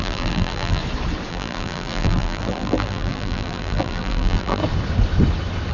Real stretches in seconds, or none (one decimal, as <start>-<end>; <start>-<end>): 0.8-1.3; 4.6-5.7

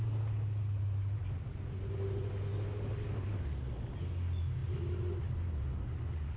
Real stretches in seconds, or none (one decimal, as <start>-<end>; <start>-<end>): 0.0-6.4

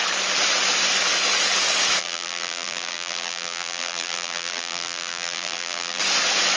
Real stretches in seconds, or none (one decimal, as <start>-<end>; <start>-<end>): 0.0-2.0; 6.0-6.6

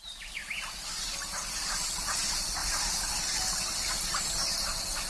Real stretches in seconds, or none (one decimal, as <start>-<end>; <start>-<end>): 0.0-5.1

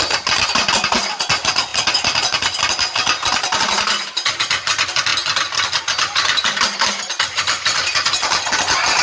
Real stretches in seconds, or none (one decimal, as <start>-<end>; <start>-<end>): 0.0-9.0

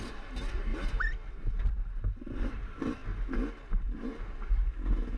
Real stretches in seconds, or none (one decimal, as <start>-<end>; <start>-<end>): 0.7-1.3; 3.0-3.7

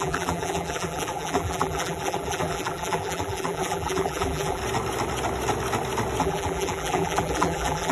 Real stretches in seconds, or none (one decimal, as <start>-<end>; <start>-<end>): 4.6-6.2